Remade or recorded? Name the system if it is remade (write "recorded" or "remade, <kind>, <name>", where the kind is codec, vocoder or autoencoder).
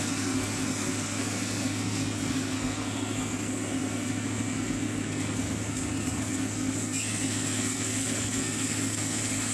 remade, codec, SNAC